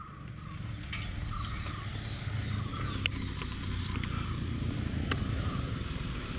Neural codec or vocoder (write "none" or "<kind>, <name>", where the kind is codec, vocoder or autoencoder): none